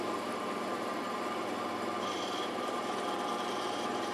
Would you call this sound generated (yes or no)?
yes